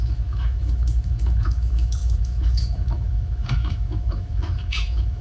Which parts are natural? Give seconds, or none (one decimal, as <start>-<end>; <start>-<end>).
none